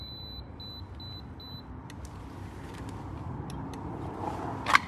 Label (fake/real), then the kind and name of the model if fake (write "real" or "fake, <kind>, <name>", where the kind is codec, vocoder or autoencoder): real